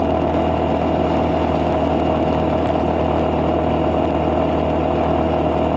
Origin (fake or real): real